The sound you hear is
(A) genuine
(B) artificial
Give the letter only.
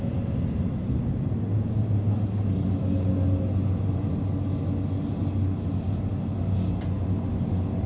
A